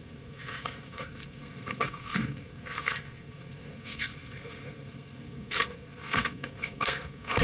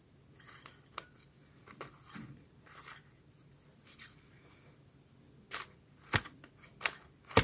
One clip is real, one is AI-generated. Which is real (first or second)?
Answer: second